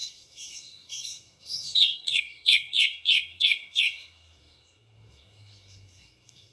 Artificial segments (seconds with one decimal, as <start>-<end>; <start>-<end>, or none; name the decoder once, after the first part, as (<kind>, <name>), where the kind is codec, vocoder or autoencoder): 0.0-6.5 (codec, SNAC)